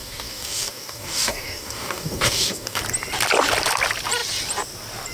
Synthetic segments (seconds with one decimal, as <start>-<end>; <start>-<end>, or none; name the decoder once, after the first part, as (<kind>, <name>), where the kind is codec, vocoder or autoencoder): 0.0-2.8 (codec, DAC)